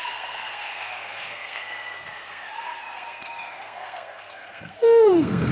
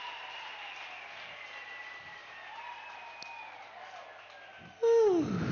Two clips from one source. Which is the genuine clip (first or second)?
second